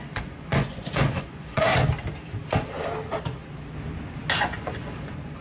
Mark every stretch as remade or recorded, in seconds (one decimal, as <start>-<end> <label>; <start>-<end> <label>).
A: 0.0-1.7 remade; 1.7-4.4 recorded; 4.4-5.4 remade